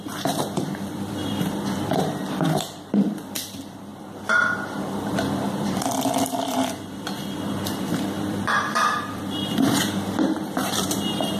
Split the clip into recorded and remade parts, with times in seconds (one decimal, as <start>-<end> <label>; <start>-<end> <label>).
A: 0.0-11.4 remade